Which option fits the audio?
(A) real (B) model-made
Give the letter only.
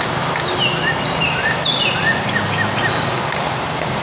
A